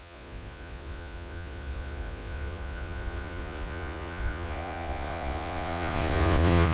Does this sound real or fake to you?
fake